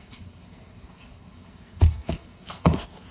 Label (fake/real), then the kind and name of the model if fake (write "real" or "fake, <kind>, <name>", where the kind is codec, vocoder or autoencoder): fake, codec, SNAC